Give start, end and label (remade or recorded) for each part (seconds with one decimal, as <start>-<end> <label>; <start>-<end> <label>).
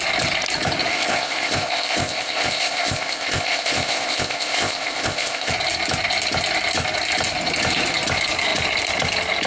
0.0-0.9 recorded; 0.9-5.5 remade; 5.5-9.5 recorded